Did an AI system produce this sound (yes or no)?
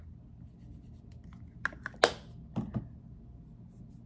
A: no